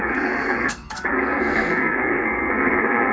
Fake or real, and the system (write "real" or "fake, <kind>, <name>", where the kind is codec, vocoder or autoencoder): fake, codec, SNAC